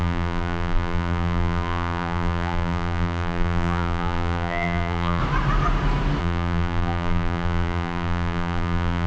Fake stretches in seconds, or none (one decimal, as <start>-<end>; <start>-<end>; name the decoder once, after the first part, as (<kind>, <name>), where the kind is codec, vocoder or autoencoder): 0.0-5.2 (vocoder, BigVGAN v2); 6.2-9.1

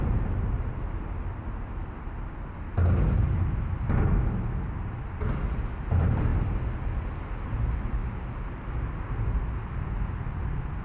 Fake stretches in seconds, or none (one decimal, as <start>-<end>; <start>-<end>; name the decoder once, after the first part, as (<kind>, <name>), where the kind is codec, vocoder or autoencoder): none